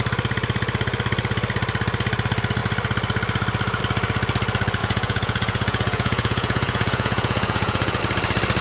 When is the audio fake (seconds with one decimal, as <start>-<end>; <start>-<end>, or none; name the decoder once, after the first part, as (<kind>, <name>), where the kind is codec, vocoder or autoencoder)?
4.8-8.0 (vocoder, Vocos)